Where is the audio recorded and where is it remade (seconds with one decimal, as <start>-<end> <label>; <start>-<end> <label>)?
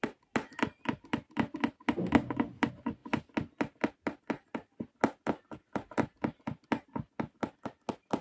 0.0-8.2 recorded